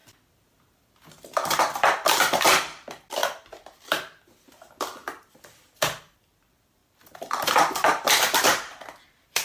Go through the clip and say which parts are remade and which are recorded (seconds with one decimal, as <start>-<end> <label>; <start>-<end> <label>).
0.0-1.6 recorded; 1.6-9.4 remade